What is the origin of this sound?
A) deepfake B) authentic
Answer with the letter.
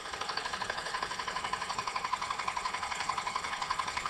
A